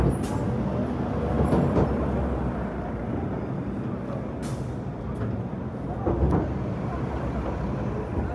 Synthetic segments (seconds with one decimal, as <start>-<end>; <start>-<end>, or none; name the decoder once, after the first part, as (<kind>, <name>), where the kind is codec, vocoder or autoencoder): none

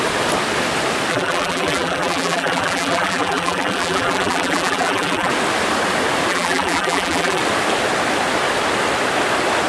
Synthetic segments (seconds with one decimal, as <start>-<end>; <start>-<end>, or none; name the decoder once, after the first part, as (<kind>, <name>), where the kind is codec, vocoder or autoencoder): 1.1-5.3 (vocoder, BigVGAN v2); 6.3-7.4

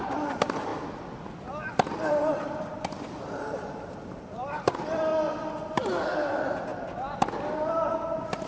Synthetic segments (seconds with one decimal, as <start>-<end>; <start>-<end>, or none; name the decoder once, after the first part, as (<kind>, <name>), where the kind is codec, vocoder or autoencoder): 0.0-0.7 (vocoder, BigVGAN v2); 2.1-5.1; 6.0-6.7; 7.6-8.5

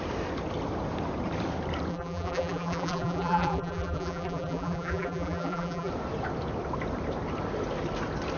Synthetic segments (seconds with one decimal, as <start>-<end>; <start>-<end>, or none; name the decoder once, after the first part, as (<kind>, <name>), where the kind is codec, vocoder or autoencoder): 1.9-5.9 (vocoder, BigVGAN v2)